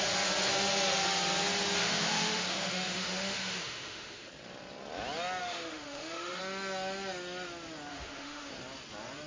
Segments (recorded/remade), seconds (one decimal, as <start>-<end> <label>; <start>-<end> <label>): 0.0-1.8 recorded; 1.8-4.3 remade; 4.3-5.4 recorded; 5.4-6.4 remade; 6.4-7.9 recorded; 7.9-8.5 remade; 8.5-9.3 recorded

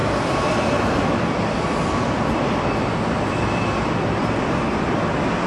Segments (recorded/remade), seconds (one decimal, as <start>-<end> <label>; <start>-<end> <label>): 0.0-5.5 recorded

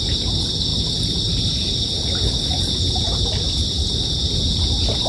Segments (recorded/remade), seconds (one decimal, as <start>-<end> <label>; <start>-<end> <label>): 0.0-5.1 recorded

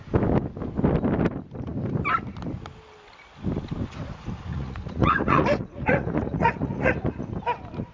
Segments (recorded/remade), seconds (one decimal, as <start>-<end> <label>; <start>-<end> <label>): 0.0-4.5 recorded; 4.5-7.3 remade; 7.3-7.9 recorded

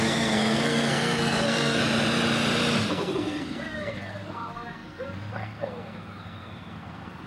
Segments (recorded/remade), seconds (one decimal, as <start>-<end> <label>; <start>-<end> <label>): 0.0-1.8 remade; 1.8-2.9 recorded; 2.9-7.3 remade

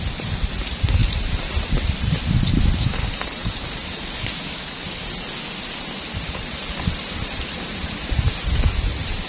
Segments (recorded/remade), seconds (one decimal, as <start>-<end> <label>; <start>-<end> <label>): 0.0-1.0 remade; 1.0-1.9 recorded; 1.9-3.4 remade; 3.4-6.0 recorded; 6.0-9.3 remade

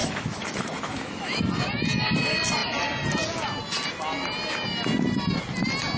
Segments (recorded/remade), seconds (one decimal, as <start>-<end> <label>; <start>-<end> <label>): 0.0-1.4 remade; 1.4-6.0 recorded

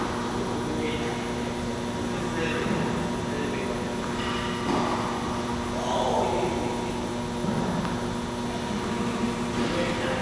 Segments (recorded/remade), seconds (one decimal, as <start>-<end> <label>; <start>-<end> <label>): 0.0-10.2 recorded